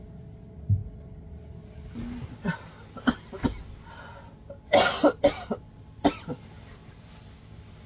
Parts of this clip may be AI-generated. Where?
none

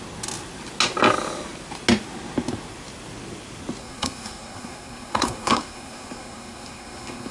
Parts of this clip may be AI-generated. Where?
3.8-7.3

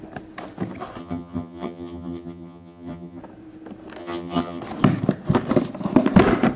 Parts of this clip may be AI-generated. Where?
1.0-3.2; 4.0-4.6

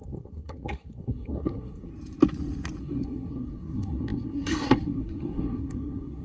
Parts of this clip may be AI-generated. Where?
0.0-1.9; 2.8-6.2

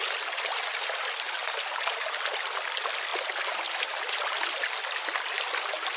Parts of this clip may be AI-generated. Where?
none

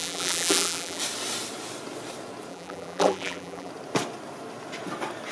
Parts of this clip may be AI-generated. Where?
0.0-1.0; 2.5-3.7

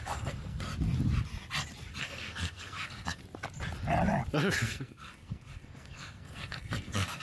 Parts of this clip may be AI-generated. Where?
0.0-0.7; 2.0-3.2; 4.5-7.2